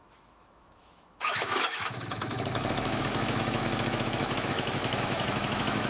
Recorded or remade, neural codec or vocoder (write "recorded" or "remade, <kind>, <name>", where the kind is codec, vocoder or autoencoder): remade, autoencoder, DAC-VAE